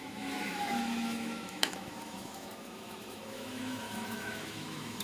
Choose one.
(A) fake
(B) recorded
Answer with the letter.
A